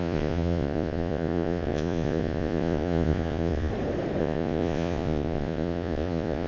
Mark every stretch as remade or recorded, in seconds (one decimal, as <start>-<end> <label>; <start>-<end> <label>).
0.0-3.7 remade; 3.7-4.2 recorded; 4.2-6.5 remade